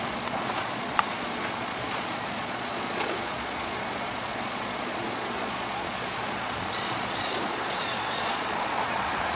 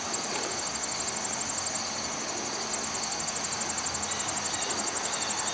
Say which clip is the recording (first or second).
second